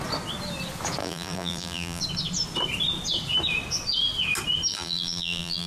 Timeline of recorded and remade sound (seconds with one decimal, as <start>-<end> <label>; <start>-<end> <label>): 0.0-1.0 recorded; 1.0-2.0 remade; 2.0-4.7 recorded; 4.7-5.7 remade